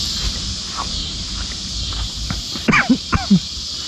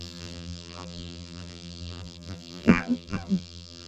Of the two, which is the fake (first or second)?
second